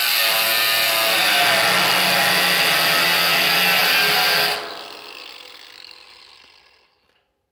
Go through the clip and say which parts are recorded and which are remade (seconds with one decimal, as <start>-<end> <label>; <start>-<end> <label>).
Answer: 0.0-7.5 recorded